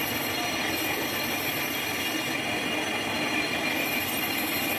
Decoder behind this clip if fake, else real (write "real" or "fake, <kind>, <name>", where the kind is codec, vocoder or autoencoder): real